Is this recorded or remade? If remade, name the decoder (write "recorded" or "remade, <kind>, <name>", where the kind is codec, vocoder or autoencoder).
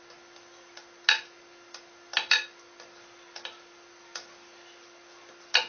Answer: recorded